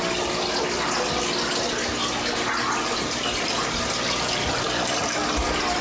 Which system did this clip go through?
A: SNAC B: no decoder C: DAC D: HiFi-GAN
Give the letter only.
B